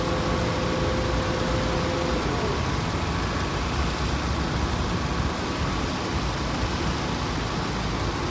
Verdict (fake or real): real